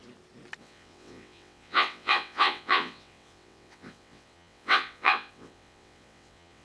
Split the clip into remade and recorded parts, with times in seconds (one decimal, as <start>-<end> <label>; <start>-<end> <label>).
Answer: 0.0-0.6 recorded; 0.6-6.6 remade